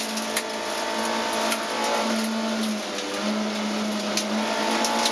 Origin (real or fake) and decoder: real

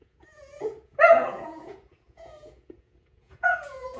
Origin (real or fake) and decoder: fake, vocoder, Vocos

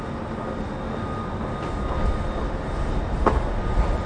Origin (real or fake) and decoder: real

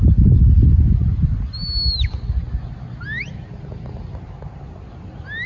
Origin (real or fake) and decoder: real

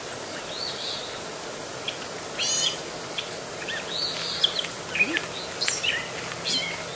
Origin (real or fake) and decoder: real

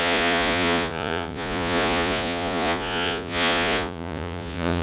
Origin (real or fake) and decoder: fake, vocoder, Vocos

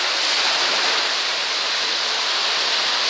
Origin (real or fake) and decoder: real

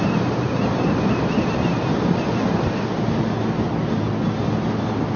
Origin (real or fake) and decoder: real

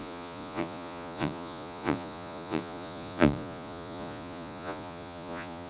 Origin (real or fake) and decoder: fake, vocoder, Vocos